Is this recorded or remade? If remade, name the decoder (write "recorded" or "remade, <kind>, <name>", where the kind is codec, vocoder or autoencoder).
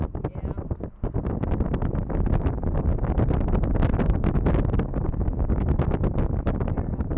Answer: recorded